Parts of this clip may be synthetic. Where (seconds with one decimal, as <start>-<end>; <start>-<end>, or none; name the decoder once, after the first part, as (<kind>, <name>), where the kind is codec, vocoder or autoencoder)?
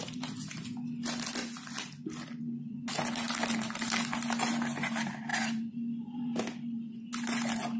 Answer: 5.3-7.0 (vocoder, BigVGAN v2)